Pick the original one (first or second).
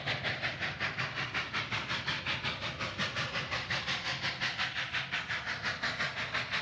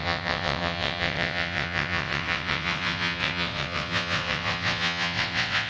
first